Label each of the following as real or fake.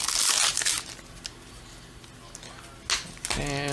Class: real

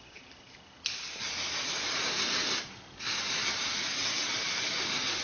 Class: real